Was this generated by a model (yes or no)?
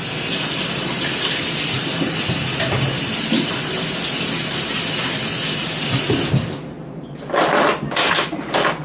yes